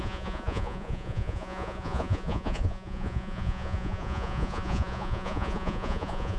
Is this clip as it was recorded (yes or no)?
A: no